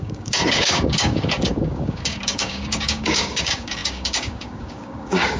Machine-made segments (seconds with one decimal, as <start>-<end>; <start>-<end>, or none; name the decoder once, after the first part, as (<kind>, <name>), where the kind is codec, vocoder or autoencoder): 0.0-5.4 (codec, DAC)